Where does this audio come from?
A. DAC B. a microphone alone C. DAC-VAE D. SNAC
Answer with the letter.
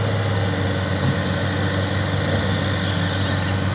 B